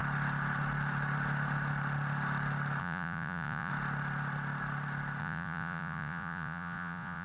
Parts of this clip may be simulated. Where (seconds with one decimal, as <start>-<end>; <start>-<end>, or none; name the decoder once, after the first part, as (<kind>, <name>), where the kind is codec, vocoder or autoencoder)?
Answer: 2.8-3.7 (vocoder, Vocos); 5.2-7.2